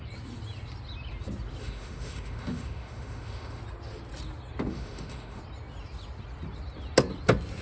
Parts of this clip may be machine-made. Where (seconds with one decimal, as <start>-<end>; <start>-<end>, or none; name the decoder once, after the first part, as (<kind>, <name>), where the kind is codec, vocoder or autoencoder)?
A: 1.6-3.6 (autoencoder, DAC-VAE); 4.7-5.4